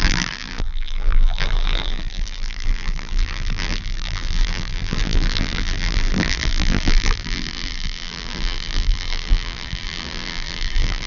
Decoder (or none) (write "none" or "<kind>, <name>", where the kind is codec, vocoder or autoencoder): vocoder, BigVGAN v2